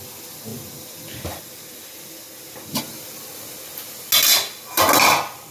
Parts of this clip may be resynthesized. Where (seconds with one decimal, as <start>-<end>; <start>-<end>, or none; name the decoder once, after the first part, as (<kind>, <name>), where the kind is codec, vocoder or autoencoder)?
none